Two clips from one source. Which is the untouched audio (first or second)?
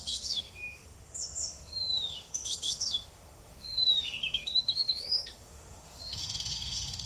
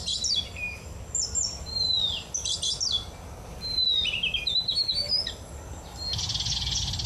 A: second